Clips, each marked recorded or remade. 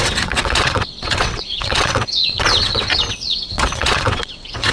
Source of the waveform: remade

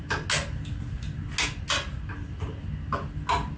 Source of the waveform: recorded